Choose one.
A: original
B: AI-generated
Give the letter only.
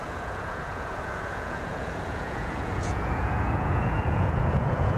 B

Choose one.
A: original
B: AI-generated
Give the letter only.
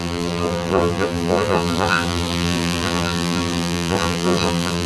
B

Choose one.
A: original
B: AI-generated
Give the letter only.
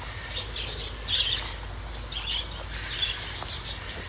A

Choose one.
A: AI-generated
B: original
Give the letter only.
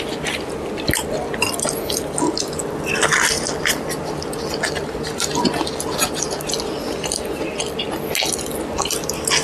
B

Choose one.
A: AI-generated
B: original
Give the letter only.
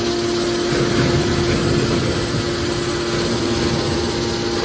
B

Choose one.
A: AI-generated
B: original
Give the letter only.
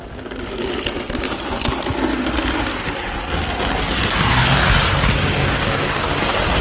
B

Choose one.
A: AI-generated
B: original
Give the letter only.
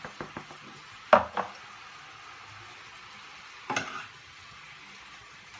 B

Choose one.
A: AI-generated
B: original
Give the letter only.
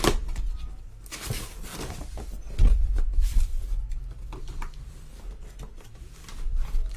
A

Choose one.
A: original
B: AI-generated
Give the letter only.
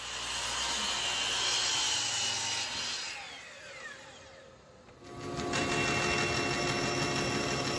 A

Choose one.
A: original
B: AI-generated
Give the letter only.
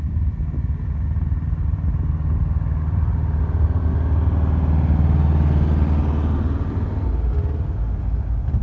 A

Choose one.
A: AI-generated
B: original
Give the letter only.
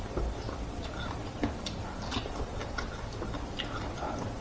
B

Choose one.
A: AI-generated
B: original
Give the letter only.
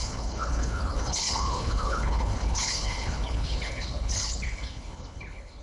A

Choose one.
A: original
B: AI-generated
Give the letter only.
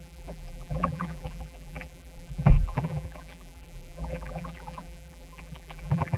B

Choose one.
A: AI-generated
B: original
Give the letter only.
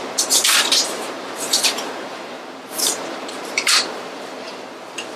A